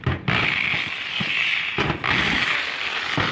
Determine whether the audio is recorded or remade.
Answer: recorded